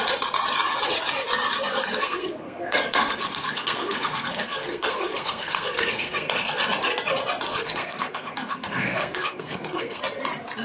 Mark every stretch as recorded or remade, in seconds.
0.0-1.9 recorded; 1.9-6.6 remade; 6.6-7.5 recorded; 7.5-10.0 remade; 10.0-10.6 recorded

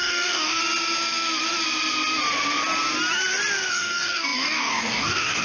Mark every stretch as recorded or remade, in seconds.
0.0-0.6 remade; 0.6-3.7 recorded; 3.7-5.4 remade